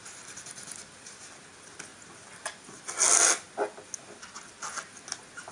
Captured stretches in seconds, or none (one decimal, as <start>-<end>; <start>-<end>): 0.0-5.5